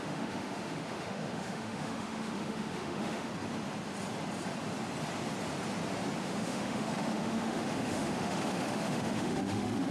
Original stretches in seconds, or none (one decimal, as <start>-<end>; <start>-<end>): 3.3-6.2